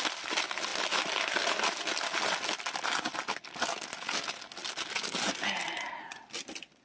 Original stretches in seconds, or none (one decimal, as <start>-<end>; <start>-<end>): 0.0-6.8